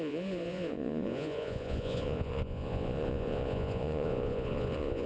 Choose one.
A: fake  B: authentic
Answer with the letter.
A